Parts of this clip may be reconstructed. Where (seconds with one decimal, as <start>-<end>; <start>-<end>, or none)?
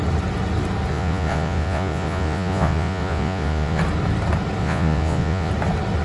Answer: 0.9-3.8; 4.6-5.5